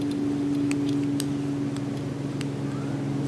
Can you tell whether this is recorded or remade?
recorded